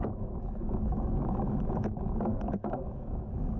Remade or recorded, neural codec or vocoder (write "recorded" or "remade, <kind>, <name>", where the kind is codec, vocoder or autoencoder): remade, autoencoder, DAC-VAE